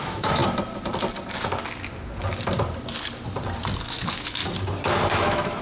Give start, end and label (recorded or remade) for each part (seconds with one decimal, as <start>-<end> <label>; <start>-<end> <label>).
0.0-0.4 remade; 0.4-3.8 recorded; 3.8-4.4 remade; 4.4-5.1 recorded; 5.1-5.6 remade